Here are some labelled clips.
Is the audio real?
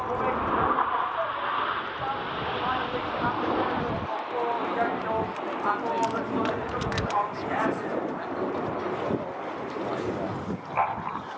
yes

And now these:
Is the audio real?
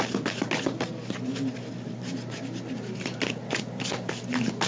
yes